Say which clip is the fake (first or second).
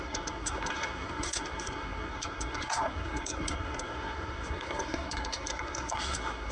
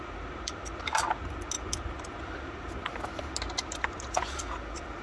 first